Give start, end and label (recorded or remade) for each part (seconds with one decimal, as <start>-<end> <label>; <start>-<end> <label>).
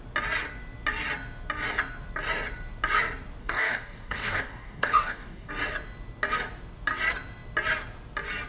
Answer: 0.0-3.4 recorded; 3.4-5.5 remade; 5.5-8.5 recorded